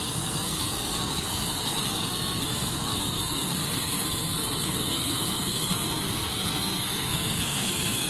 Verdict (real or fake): fake